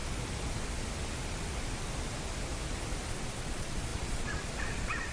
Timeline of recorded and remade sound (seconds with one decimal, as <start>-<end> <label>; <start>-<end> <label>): 0.0-3.1 recorded; 3.1-5.1 remade